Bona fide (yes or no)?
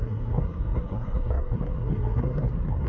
no